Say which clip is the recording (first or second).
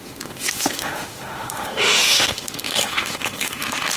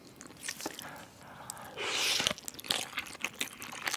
second